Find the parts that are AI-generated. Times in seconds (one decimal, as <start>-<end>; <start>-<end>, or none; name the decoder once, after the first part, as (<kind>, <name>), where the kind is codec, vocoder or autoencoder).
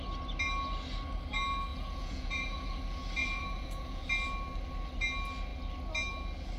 1.7-2.8 (vocoder, Vocos); 3.2-4.0